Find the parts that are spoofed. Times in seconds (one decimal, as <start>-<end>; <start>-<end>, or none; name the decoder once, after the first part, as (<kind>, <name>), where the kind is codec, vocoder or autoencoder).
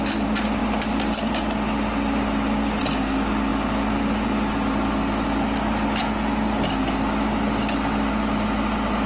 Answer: none